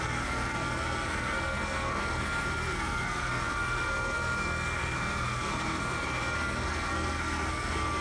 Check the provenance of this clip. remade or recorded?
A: remade